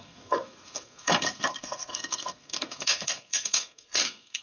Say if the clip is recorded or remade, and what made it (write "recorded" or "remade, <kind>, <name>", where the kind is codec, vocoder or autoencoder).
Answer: remade, codec, SNAC